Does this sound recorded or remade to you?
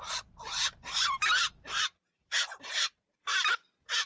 remade